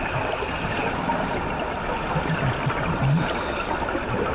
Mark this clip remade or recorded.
recorded